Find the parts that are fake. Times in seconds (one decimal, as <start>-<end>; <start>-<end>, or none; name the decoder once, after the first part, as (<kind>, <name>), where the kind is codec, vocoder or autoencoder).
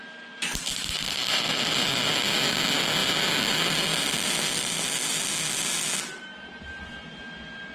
0.0-1.9 (vocoder, BigVGAN v2)